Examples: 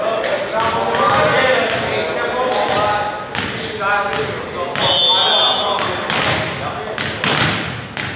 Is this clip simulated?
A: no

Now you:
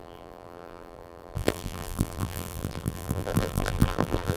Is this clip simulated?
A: yes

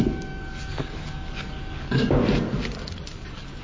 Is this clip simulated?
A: yes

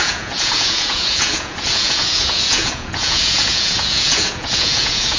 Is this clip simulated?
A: yes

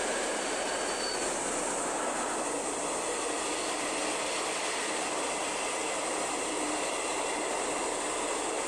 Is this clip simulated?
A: no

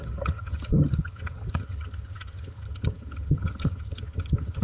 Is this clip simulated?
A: yes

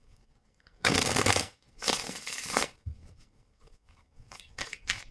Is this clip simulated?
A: yes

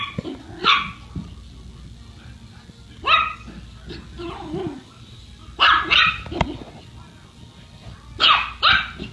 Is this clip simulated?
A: no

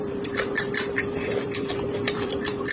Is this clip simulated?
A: yes